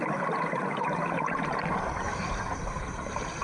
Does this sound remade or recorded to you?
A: remade